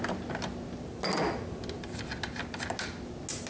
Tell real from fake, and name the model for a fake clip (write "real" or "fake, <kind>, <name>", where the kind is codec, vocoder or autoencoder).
real